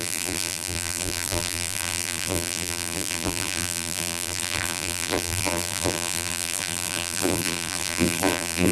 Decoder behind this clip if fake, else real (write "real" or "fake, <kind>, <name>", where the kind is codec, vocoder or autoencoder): fake, vocoder, BigVGAN v2